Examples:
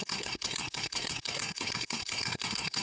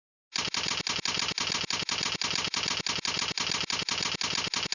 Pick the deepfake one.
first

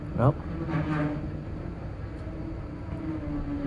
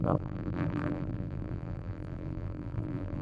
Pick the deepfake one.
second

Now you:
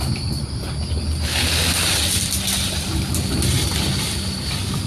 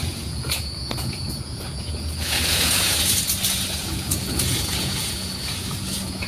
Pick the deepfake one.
second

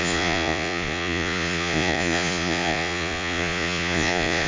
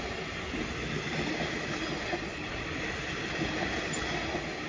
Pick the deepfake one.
first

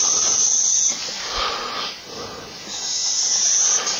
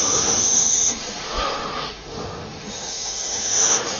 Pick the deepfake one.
second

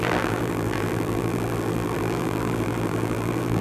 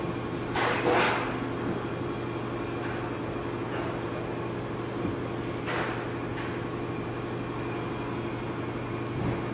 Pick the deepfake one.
first